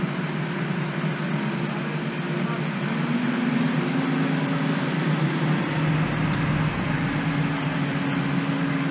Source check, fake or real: real